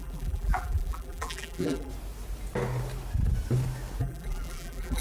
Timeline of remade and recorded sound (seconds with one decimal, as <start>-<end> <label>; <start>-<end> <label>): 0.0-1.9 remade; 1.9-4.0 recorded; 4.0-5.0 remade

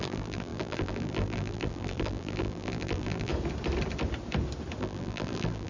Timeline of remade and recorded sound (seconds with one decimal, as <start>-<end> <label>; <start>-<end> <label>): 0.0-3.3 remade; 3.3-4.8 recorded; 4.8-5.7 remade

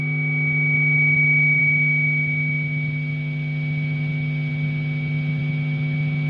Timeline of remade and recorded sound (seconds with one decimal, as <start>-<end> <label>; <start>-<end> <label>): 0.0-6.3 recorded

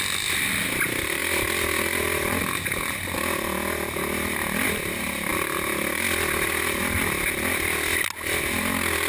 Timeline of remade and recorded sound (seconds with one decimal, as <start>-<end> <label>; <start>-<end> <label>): 0.0-9.1 recorded

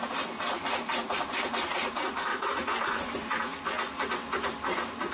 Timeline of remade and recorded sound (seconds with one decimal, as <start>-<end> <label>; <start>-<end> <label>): 0.0-2.3 recorded; 2.3-3.4 remade; 3.4-5.1 recorded

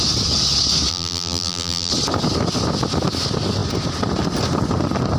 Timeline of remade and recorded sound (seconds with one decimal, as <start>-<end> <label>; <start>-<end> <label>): 0.0-0.9 recorded; 0.9-1.9 remade; 1.9-5.2 recorded

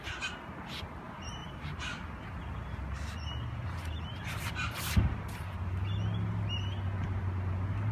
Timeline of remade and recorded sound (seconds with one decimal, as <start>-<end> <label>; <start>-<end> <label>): 0.0-1.4 recorded; 1.4-2.1 remade; 2.1-4.1 recorded; 4.1-4.6 remade; 4.6-7.9 recorded